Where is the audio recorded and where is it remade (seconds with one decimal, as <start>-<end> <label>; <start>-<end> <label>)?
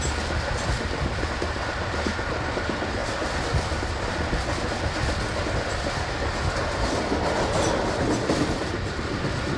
0.0-9.6 recorded